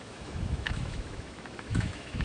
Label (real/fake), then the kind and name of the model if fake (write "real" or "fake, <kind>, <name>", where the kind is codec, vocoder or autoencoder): fake, autoencoder, DAC-VAE